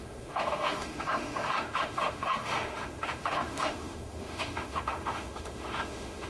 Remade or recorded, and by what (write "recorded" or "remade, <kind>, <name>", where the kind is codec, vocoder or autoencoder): remade, autoencoder, DAC-VAE